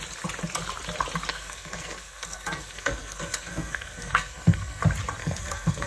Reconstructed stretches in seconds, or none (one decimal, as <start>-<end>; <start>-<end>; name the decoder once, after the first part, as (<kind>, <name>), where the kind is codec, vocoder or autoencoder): 1.3-4.8 (codec, SNAC); 5.2-5.9